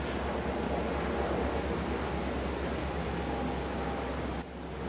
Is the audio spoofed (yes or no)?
no